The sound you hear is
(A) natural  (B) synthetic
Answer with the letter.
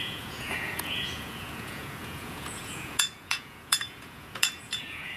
B